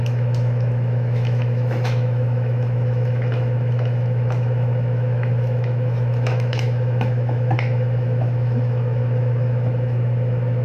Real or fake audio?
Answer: fake